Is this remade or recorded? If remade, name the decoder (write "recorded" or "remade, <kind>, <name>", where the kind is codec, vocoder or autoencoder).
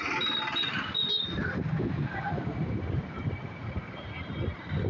recorded